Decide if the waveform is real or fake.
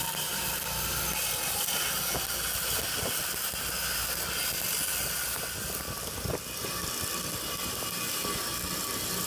real